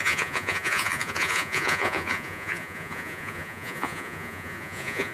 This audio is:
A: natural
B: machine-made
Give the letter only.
B